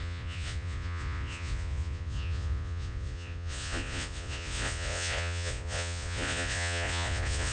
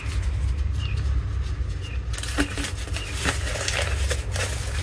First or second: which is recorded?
second